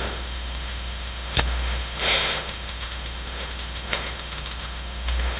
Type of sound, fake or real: fake